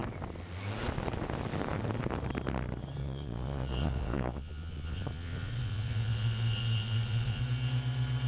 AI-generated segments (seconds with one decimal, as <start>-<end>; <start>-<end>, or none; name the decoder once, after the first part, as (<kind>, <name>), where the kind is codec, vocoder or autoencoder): 3.0-7.4 (vocoder, Vocos)